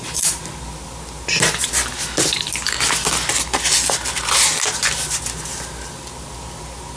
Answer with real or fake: real